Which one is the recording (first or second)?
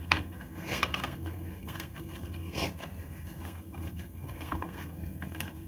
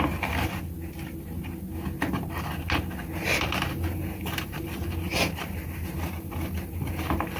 second